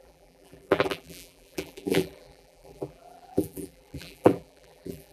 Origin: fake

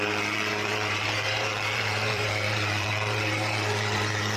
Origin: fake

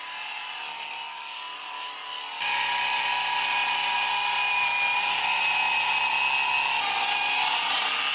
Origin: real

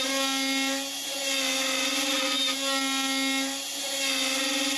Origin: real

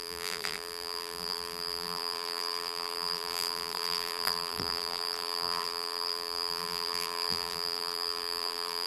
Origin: fake